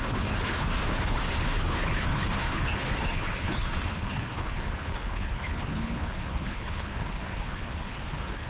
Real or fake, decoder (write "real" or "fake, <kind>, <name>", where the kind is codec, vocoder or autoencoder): fake, codec, HILCodec